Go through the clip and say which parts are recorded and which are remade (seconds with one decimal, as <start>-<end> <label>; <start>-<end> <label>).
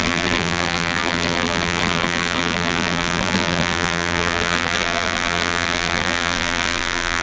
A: 0.0-7.2 remade